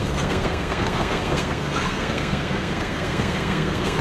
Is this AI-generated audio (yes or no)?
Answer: yes